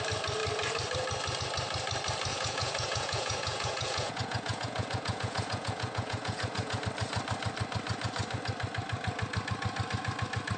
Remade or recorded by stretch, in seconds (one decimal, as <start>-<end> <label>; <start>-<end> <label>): 0.0-2.3 recorded; 2.3-6.8 remade; 6.8-10.6 recorded